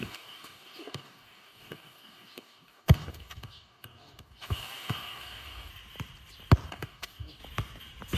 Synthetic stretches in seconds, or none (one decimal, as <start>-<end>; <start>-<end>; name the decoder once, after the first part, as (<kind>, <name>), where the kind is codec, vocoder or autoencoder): 0.0-5.7 (codec, DAC); 6.7-7.4